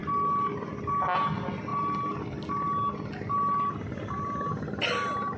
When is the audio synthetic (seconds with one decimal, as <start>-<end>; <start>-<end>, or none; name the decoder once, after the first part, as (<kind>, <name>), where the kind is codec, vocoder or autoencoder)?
none